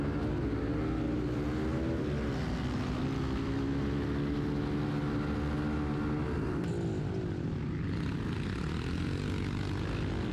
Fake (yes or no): no